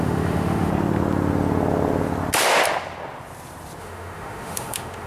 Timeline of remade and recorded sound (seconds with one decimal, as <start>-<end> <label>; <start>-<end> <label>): 0.0-0.7 remade; 0.7-3.8 recorded; 3.8-5.1 remade